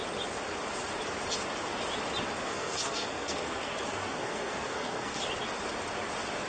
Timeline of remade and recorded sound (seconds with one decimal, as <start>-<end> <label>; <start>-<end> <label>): 0.0-2.4 recorded; 2.4-5.2 remade; 5.2-6.5 recorded